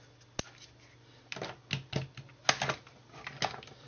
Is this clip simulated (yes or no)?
no